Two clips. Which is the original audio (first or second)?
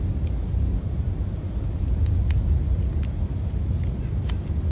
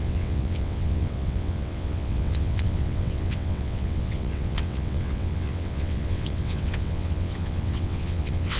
first